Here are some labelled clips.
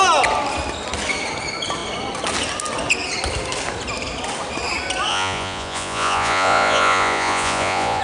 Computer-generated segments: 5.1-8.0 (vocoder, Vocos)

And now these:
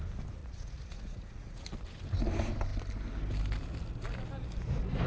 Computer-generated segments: 0.4-1.6 (vocoder, Vocos)

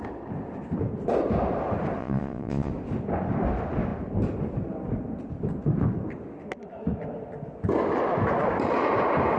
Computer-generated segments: 2.0-2.7 (vocoder, Vocos)

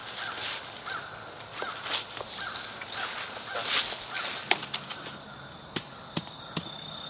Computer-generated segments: none